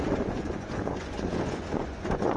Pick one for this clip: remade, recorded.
remade